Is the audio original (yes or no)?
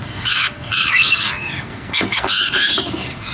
no